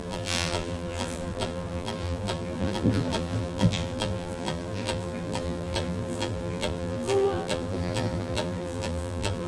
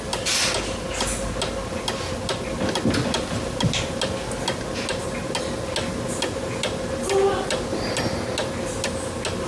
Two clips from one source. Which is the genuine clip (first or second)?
second